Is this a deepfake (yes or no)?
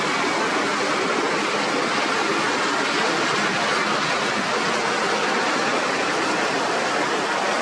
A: no